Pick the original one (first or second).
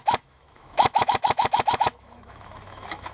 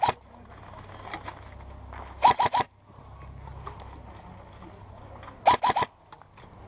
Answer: second